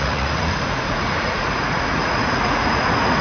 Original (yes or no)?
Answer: no